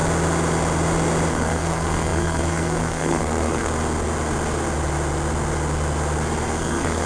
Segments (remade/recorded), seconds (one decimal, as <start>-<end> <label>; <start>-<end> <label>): 0.0-1.3 recorded; 1.3-3.7 remade; 3.7-6.5 recorded; 6.5-7.1 remade